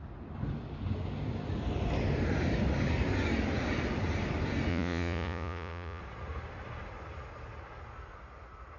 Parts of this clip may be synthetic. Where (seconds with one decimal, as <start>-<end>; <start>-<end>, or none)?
4.7-6.0